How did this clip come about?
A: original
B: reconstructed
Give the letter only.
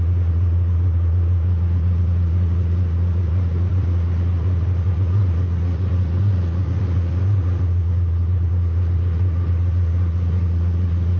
B